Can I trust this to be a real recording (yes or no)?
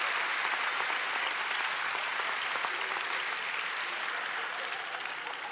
yes